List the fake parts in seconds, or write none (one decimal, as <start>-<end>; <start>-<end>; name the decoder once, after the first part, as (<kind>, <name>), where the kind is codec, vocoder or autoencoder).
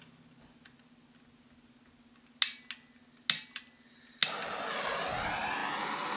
none